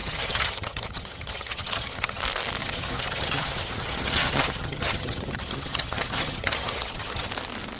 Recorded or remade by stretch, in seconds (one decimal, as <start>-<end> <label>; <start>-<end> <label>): 0.0-2.2 remade; 2.2-2.6 recorded; 2.6-7.3 remade; 7.3-7.8 recorded